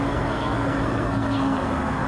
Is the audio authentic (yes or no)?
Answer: no